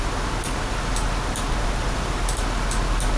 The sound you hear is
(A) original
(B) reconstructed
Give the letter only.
A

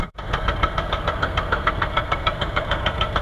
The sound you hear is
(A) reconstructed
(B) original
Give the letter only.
A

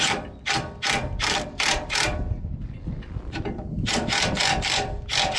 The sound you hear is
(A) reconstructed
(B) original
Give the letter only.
B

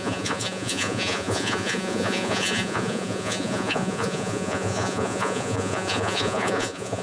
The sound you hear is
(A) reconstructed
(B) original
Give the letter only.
A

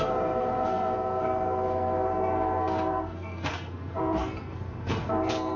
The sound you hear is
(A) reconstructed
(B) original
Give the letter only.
A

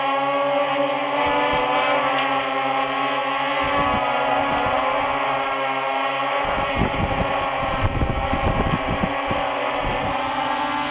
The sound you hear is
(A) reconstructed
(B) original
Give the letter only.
B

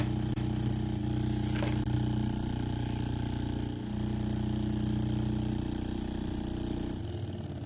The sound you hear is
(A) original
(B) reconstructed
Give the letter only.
A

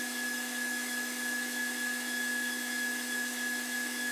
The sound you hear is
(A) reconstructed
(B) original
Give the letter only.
A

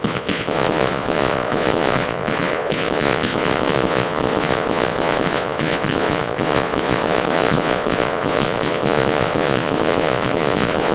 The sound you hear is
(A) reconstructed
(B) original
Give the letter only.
A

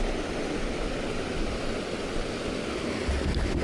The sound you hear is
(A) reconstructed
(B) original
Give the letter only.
B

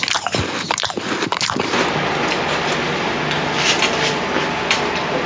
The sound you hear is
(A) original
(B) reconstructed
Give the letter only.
A